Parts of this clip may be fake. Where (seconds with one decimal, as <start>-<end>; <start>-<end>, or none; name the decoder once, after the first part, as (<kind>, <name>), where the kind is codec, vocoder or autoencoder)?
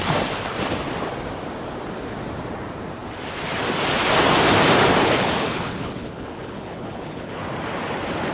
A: 5.0-7.4 (codec, HILCodec)